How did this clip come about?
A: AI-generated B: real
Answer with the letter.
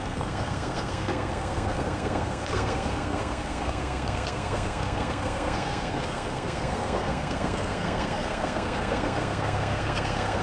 A